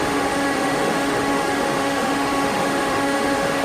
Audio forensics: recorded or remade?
remade